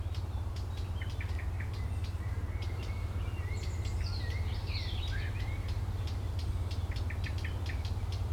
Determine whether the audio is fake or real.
fake